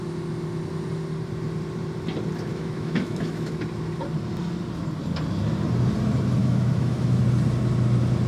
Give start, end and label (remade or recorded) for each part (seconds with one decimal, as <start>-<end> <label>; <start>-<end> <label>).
0.0-2.5 recorded; 2.5-3.6 remade; 3.6-6.4 recorded; 6.4-7.2 remade; 7.2-8.3 recorded